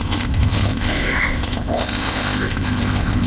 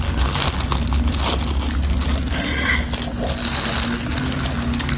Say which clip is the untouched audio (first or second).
second